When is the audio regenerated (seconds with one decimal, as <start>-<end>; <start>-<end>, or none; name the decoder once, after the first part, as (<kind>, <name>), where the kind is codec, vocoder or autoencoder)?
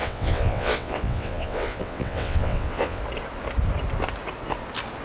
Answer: 0.0-3.0 (vocoder, WaveNeXt)